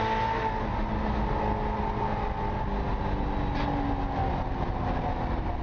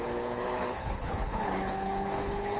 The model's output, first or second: second